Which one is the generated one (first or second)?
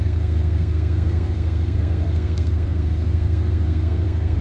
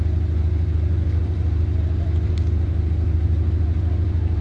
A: first